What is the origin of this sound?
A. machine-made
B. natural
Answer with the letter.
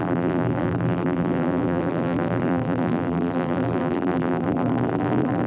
A